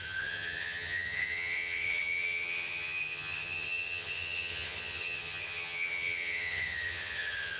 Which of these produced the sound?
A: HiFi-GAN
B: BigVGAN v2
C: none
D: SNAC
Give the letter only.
A